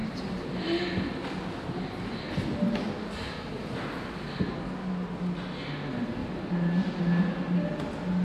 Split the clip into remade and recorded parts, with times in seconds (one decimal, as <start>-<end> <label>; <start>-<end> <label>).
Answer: 0.0-6.2 recorded; 6.2-7.0 remade; 7.0-8.2 recorded